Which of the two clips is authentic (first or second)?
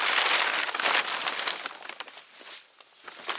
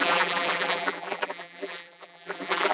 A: first